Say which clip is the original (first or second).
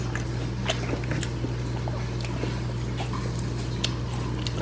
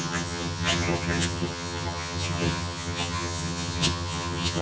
first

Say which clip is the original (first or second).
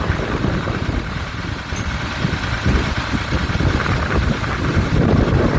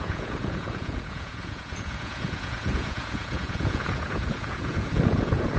first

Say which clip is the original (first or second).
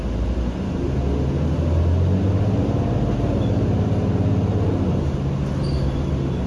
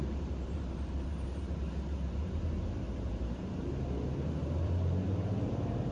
first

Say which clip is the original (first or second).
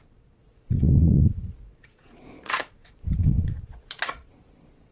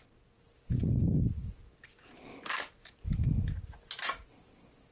second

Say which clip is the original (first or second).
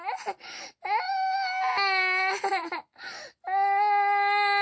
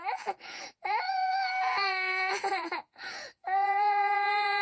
first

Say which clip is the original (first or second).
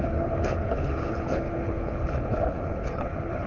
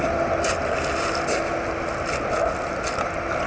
second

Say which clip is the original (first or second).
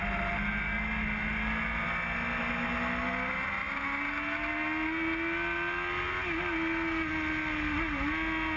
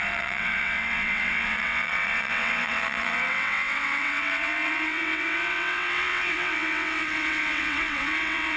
first